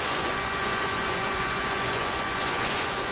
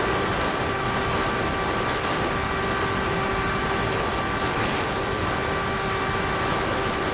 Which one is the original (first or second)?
second